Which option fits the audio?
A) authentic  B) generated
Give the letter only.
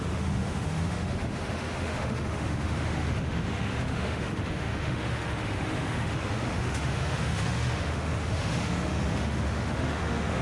B